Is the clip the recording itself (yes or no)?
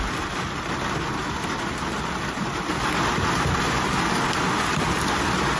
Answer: yes